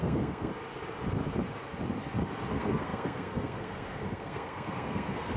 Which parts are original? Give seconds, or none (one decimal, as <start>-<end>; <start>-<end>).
0.5-2.5